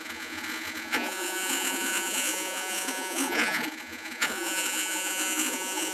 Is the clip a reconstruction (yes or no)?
yes